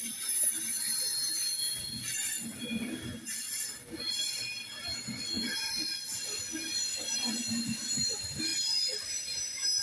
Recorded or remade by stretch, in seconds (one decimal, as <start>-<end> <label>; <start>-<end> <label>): 0.0-9.8 recorded